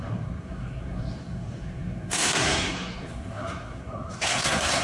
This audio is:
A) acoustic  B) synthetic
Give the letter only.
B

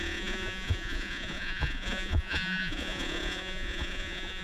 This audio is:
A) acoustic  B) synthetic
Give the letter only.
B